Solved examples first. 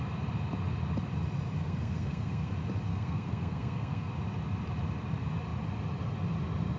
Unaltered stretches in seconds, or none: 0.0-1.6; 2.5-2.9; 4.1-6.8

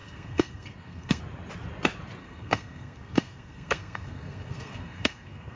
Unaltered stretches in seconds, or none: 1.2-2.2

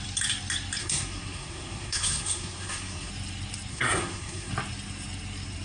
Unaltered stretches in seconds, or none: 0.0-0.8; 3.1-3.7; 4.5-5.6

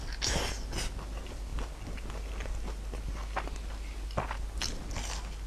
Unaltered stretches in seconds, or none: 0.0-5.5